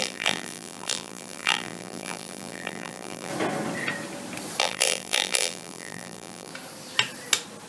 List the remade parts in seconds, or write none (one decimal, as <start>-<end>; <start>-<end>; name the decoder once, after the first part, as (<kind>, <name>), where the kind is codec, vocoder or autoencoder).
0.0-3.3 (vocoder, BigVGAN v2); 4.6-6.5